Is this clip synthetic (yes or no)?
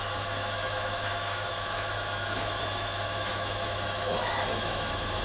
yes